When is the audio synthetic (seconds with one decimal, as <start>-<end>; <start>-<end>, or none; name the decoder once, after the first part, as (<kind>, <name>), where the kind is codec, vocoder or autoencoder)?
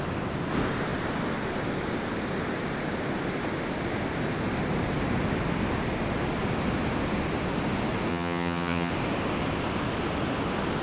8.1-8.9 (vocoder, HiFi-GAN)